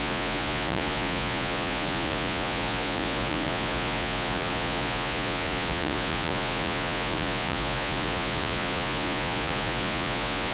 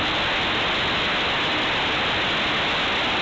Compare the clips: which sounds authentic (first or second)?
second